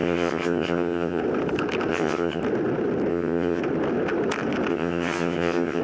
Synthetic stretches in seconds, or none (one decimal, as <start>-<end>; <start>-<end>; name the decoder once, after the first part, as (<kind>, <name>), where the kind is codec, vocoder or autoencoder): 0.0-1.2 (vocoder, HiFi-GAN); 1.9-2.4; 3.1-3.6; 4.7-5.8